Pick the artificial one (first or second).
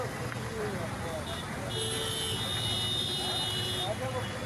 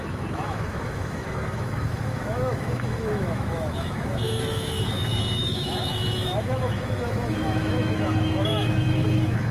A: second